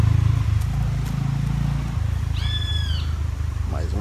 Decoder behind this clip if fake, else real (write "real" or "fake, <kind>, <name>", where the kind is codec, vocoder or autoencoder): real